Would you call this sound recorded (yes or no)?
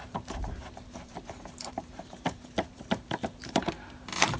no